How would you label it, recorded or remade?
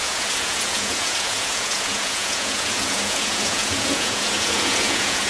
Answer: remade